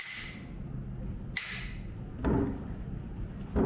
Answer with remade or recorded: recorded